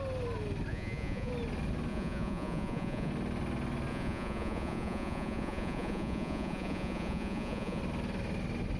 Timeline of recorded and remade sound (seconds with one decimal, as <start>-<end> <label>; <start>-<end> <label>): 0.0-0.7 recorded; 0.7-1.3 remade; 1.3-1.9 recorded; 1.9-3.1 remade; 3.1-3.9 recorded; 3.9-7.8 remade; 7.8-8.8 recorded

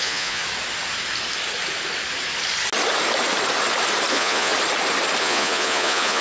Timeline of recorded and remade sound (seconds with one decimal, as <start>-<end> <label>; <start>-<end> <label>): 0.0-0.4 remade; 0.4-4.1 recorded; 4.1-4.5 remade; 4.5-5.2 recorded; 5.2-6.2 remade

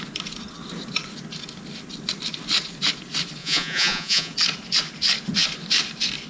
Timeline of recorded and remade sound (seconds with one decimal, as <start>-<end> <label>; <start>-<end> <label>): 0.0-3.4 recorded; 3.4-4.3 remade; 4.3-6.3 recorded

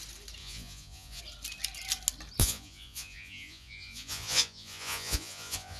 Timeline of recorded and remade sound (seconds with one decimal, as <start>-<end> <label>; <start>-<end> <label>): 0.0-0.4 recorded; 0.4-1.2 remade; 1.2-2.4 recorded; 2.4-5.8 remade

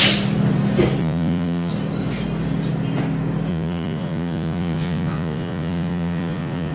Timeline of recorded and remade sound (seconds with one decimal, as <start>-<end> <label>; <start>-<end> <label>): 0.0-1.0 recorded; 1.0-1.7 remade; 1.7-3.5 recorded; 3.5-6.7 remade

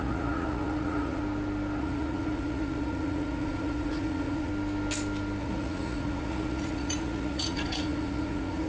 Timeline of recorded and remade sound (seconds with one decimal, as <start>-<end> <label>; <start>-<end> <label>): 0.0-1.2 remade; 1.2-1.8 recorded; 1.8-4.5 remade; 4.5-5.4 recorded; 5.4-8.7 remade

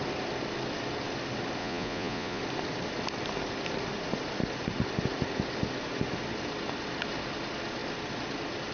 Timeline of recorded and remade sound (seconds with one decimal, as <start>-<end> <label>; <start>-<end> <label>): 0.0-1.6 recorded; 1.6-2.4 remade; 2.4-8.7 recorded

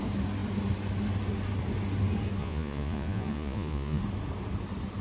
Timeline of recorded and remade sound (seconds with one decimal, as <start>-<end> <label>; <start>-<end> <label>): 0.0-2.4 recorded; 2.4-4.0 remade; 4.0-5.0 recorded